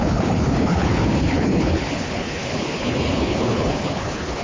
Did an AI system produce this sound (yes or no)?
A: yes